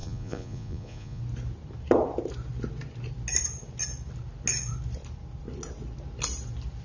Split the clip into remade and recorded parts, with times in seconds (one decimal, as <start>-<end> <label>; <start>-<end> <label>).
0.0-1.2 remade; 1.2-6.8 recorded